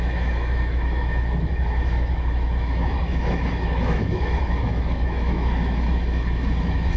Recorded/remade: remade